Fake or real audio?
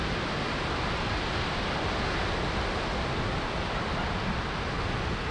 real